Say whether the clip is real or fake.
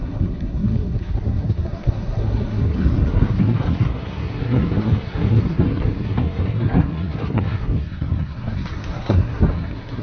fake